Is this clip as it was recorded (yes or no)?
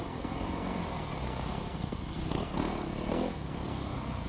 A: no